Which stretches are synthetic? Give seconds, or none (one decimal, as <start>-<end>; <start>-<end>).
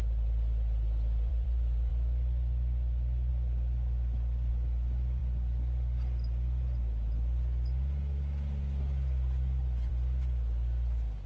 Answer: 1.3-1.9